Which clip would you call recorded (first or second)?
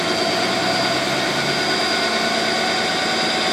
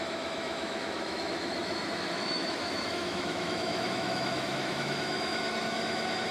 first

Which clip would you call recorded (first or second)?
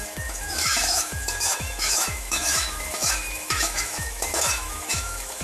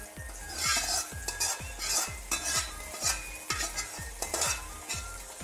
second